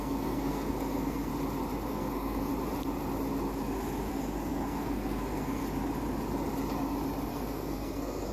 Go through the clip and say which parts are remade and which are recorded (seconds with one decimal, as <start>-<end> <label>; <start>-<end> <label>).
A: 0.0-1.3 remade; 1.3-1.9 recorded; 1.9-2.5 remade; 2.5-4.1 recorded; 4.1-5.6 remade; 5.6-7.3 recorded; 7.3-8.3 remade